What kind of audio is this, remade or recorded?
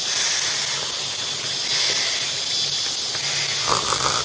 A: recorded